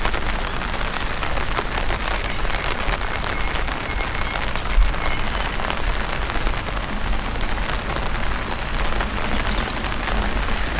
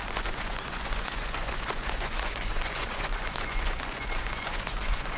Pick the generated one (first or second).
second